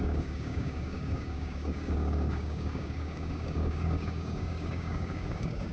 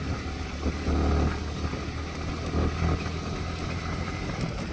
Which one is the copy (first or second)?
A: first